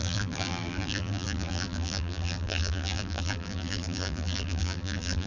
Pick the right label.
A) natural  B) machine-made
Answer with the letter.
B